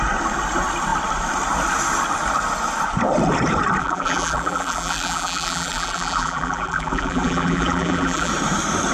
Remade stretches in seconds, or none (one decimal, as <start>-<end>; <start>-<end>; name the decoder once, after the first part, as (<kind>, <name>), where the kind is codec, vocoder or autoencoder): 3.8-8.3 (vocoder, BigVGAN v2)